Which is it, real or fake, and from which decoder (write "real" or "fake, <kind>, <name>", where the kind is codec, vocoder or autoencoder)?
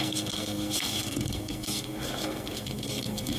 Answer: fake, codec, SNAC